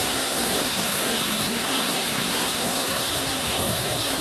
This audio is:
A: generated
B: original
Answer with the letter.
A